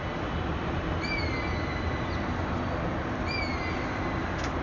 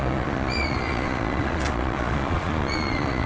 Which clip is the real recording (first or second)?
first